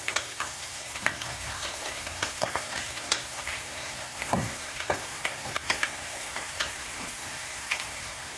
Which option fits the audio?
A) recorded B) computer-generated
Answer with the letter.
B